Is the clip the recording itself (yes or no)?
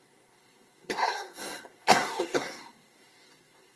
no